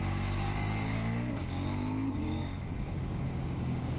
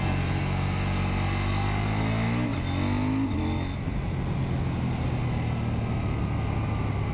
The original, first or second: second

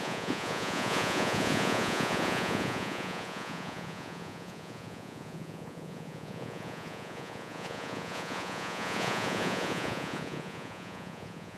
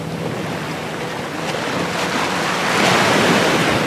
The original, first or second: second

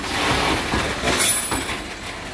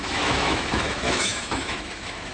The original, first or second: first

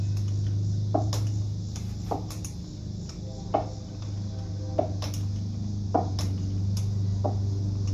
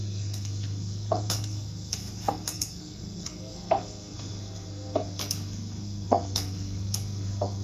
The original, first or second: first